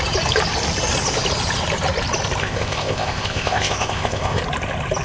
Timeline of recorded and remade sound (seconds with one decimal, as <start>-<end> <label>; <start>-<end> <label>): 0.0-2.4 recorded; 2.4-4.4 remade; 4.4-5.0 recorded